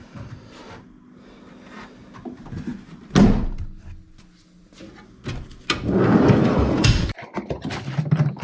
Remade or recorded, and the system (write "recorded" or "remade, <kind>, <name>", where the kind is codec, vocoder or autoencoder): recorded